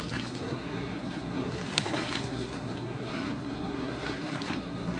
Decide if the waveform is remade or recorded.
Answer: remade